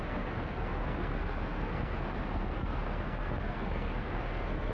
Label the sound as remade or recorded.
remade